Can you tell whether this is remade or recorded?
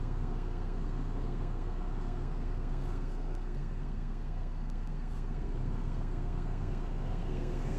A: remade